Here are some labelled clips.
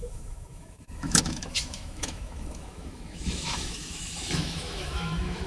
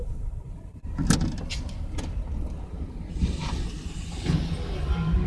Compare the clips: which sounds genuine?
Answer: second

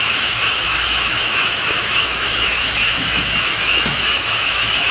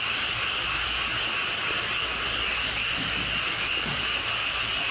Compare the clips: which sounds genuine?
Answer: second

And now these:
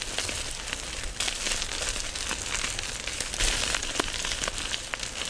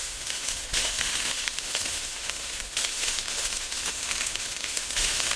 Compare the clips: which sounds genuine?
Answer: first